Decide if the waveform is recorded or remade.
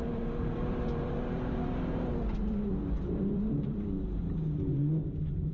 remade